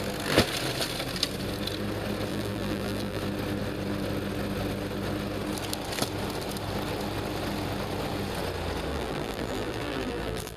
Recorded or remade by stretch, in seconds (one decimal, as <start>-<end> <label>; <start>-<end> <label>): 0.0-2.3 recorded; 2.3-3.2 remade; 3.2-8.9 recorded; 8.9-10.6 remade